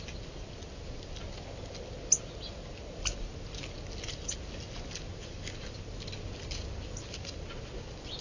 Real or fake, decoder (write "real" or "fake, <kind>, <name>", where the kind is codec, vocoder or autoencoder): real